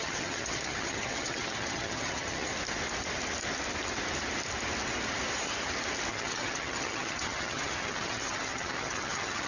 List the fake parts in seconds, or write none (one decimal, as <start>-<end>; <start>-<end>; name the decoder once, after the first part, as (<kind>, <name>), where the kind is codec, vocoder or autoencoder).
0.0-2.5 (vocoder, HiFi-GAN); 6.1-9.5